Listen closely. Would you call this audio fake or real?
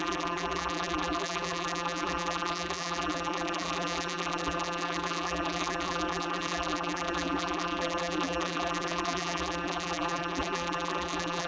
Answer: fake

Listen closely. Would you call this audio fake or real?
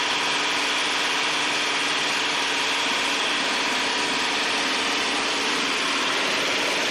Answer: real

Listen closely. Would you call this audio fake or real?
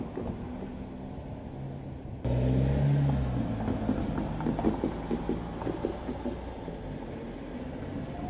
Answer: real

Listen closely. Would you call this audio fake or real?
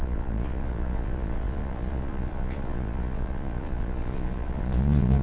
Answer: fake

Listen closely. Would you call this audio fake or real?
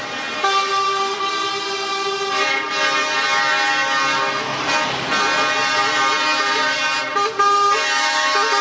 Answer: real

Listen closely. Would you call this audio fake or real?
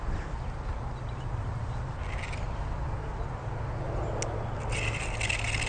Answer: real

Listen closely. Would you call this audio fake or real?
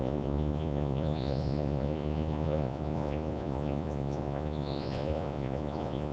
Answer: fake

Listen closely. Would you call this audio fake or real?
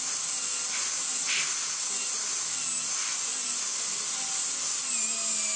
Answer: real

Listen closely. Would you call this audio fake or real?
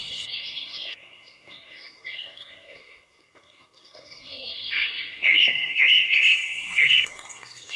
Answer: fake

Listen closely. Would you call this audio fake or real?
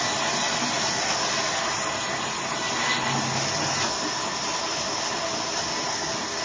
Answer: real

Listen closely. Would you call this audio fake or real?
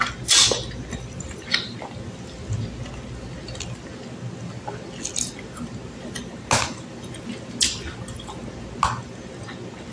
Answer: real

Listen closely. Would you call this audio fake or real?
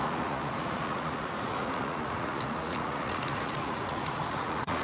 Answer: fake